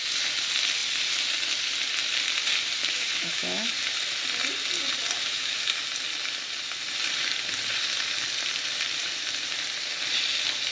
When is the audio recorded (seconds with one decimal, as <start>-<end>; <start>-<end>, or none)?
0.0-2.8; 3.7-5.2; 5.8-10.7